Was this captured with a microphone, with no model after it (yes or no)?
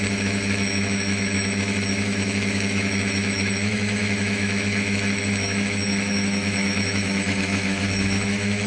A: no